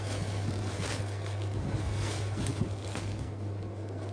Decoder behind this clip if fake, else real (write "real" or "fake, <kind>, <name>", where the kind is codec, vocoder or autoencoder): fake, codec, SNAC